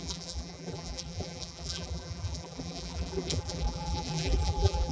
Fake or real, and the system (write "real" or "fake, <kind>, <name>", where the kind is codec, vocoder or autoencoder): fake, vocoder, BigVGAN v2